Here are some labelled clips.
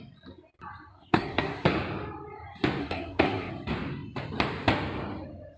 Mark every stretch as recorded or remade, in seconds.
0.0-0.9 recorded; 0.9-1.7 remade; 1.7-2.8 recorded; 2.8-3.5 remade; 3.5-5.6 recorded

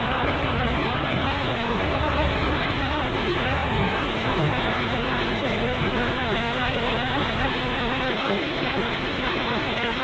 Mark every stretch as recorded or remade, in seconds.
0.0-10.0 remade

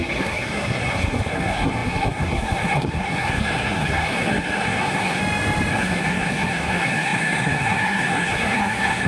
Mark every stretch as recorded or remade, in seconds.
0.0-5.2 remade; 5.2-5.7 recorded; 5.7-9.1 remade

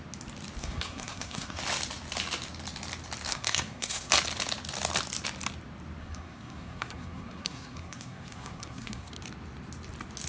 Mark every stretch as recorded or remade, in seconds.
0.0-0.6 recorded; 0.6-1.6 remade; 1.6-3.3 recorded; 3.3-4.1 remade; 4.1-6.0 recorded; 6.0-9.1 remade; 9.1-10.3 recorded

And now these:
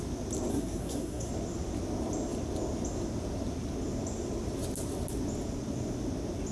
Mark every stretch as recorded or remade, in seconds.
0.0-0.5 recorded; 0.5-1.3 remade; 1.3-6.5 recorded

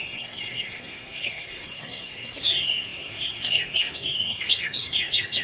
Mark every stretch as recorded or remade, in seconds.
0.0-5.4 remade

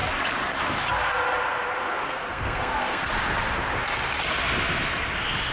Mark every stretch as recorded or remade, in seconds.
0.0-2.0 recorded; 2.0-3.1 remade; 3.1-5.5 recorded